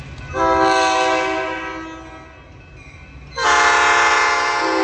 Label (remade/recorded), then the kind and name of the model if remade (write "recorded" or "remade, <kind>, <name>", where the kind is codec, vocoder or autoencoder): recorded